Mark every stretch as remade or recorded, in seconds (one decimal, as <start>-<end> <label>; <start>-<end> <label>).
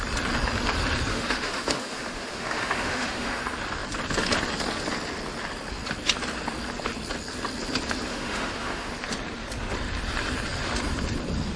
0.0-1.1 recorded; 1.1-3.4 remade; 3.4-8.1 recorded; 8.1-8.9 remade; 8.9-11.6 recorded